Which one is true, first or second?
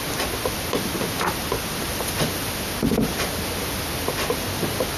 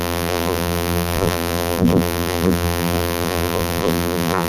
first